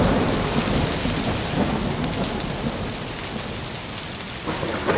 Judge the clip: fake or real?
real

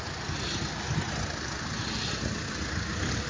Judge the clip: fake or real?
real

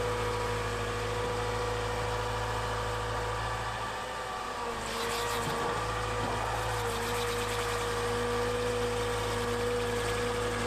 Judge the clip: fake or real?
real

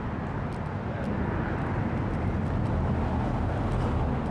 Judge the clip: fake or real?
real